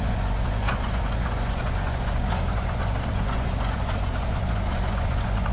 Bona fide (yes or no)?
no